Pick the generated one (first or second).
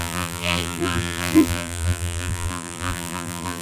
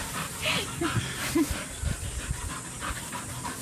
first